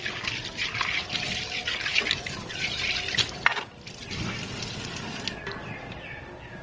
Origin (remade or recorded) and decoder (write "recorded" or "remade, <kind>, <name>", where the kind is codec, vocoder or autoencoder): recorded